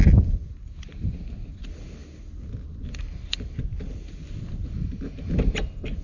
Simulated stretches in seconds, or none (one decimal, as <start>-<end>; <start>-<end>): none